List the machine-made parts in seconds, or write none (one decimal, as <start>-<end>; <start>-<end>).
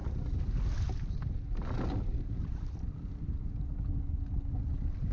0.0-0.6; 2.1-2.8